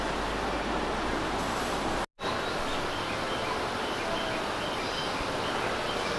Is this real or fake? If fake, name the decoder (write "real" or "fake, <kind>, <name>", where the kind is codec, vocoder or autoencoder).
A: real